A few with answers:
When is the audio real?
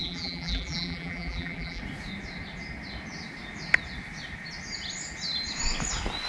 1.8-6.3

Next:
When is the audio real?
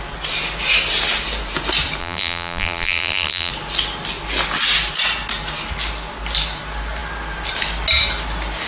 0.0-2.0; 3.5-8.7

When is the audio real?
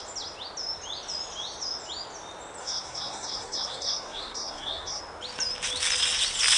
0.0-2.6; 5.0-6.6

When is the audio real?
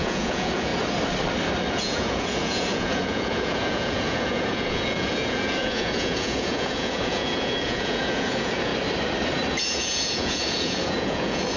0.7-1.7; 8.7-9.5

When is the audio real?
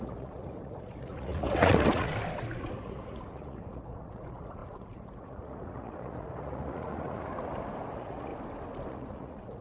2.1-2.6; 7.3-7.9; 8.3-8.9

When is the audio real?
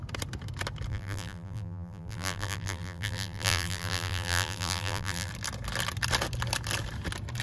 0.0-0.9; 5.3-7.4